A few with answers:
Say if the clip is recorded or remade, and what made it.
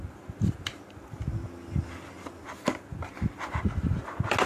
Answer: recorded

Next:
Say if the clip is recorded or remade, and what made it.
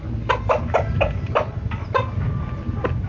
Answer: recorded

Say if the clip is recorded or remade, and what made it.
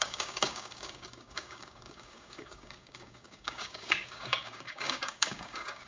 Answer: remade, codec, DAC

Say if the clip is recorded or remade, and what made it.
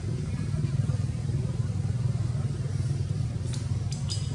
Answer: recorded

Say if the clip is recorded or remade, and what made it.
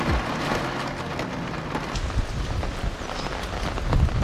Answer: recorded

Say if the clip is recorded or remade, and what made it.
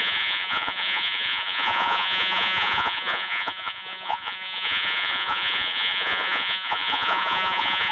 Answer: remade, vocoder, Vocos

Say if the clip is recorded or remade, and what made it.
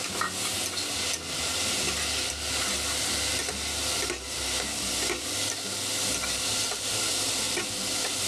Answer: recorded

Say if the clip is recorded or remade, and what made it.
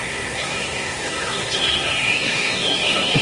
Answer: remade, codec, SNAC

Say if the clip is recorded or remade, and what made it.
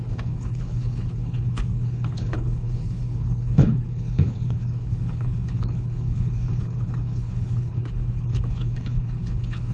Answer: remade, codec, HILCodec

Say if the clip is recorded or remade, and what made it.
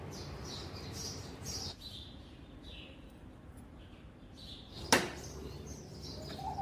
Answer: recorded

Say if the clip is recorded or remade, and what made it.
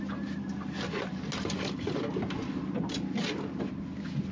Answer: recorded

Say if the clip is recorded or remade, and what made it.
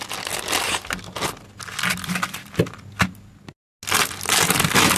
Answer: recorded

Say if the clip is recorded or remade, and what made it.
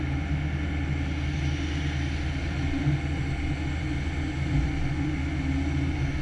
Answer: recorded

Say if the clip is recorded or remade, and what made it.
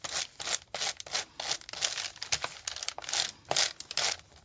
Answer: recorded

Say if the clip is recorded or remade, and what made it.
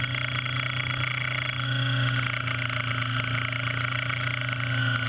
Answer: recorded